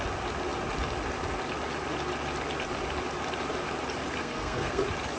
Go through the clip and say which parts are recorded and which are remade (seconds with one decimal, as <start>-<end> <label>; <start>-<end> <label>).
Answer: 0.0-4.2 recorded; 4.2-4.8 remade; 4.8-5.2 recorded